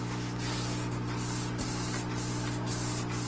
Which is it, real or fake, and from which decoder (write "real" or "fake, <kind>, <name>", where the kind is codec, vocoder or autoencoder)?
real